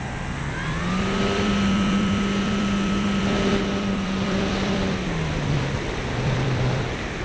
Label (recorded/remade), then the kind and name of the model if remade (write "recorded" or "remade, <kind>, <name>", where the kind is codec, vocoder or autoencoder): remade, vocoder, BigVGAN v2